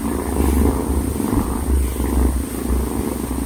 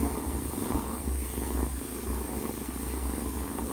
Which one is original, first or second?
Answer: first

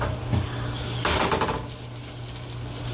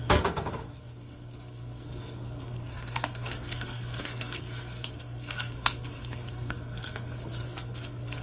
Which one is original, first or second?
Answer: first